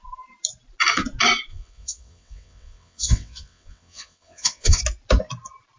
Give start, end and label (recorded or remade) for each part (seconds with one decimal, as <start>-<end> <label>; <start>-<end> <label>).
0.0-1.5 recorded; 1.5-4.8 remade; 4.8-5.8 recorded